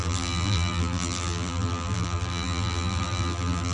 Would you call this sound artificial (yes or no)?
yes